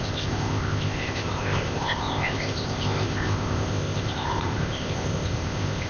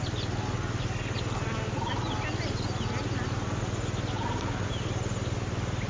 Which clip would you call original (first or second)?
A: second